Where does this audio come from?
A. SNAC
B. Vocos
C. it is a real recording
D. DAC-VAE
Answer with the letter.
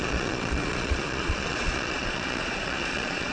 B